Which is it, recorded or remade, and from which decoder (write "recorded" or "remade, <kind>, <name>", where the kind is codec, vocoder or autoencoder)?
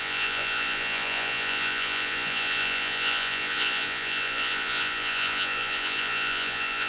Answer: remade, vocoder, Vocos